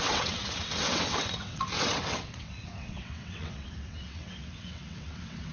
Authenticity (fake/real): fake